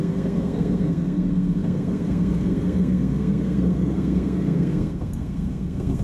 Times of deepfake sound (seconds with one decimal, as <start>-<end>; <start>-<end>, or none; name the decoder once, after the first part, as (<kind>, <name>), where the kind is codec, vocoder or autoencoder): 0.0-6.0 (codec, SNAC)